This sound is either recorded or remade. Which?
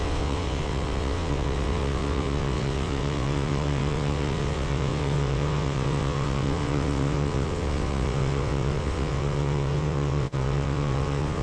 remade